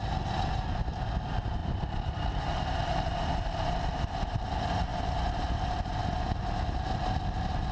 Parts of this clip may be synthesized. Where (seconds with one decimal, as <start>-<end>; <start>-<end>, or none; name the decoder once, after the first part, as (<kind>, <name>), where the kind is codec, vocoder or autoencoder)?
1.6-3.3 (vocoder, BigVGAN v2); 4.9-5.8